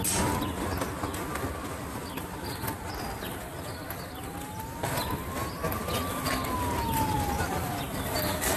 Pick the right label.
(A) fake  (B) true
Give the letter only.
B